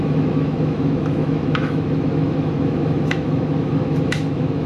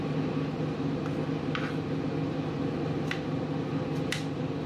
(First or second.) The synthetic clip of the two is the first